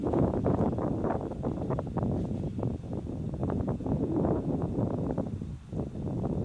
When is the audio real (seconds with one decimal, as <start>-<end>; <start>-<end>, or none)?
0.6-3.4; 4.8-6.4